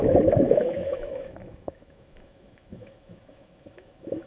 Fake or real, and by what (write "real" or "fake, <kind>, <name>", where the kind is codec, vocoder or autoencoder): fake, autoencoder, DAC-VAE